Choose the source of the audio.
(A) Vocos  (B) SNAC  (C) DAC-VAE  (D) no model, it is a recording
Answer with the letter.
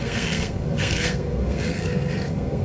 B